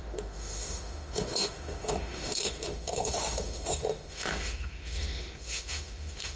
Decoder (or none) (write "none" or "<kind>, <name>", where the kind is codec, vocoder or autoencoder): autoencoder, DAC-VAE